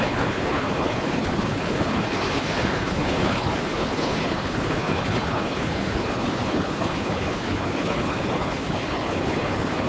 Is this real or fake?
fake